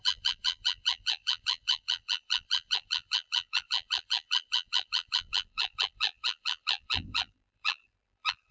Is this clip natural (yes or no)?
no